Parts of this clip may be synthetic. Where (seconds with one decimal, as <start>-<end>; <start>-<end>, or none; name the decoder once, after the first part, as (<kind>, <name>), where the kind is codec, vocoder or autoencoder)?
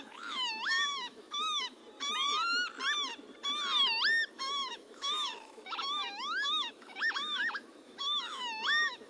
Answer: 0.0-1.8 (autoencoder, DAC-VAE); 4.3-9.1